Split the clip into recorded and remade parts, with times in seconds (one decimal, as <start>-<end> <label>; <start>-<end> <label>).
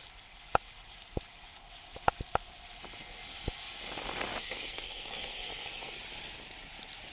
0.0-4.4 recorded; 4.4-6.0 remade; 6.0-7.1 recorded